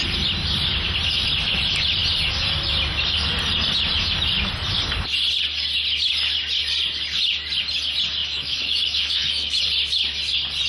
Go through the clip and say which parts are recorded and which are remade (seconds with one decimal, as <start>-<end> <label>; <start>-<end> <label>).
0.0-8.2 recorded; 8.2-9.6 remade; 9.6-10.7 recorded